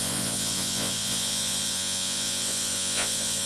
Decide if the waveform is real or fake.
fake